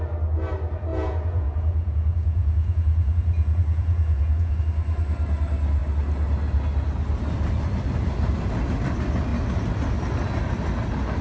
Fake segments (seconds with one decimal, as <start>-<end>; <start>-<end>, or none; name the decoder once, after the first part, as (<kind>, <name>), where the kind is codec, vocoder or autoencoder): 0.9-4.6 (vocoder, Vocos)